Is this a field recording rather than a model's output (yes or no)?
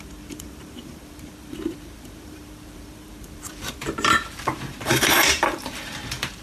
no